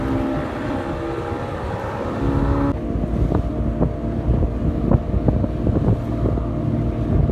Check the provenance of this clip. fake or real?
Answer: real